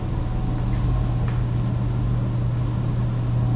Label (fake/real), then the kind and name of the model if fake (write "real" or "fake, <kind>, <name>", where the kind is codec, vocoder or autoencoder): real